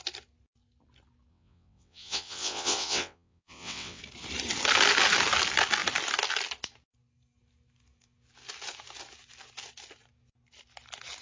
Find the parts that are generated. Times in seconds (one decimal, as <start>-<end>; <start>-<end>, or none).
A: 1.3-4.0